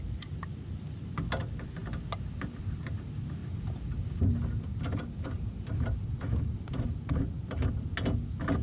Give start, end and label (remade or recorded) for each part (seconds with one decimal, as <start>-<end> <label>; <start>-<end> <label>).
0.0-8.6 recorded